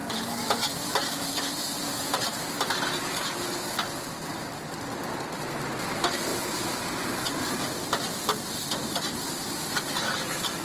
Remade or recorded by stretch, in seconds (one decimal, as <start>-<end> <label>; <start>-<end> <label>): 0.0-5.0 remade; 5.0-6.3 recorded; 6.3-8.0 remade; 8.0-8.8 recorded; 8.8-10.6 remade